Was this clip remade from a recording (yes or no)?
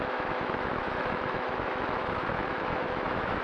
yes